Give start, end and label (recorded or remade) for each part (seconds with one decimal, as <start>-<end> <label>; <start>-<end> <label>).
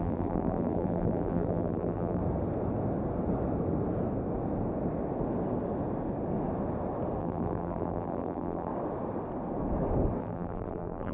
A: 0.0-2.2 remade; 2.2-7.2 recorded; 7.2-8.7 remade; 8.7-10.2 recorded; 10.2-11.1 remade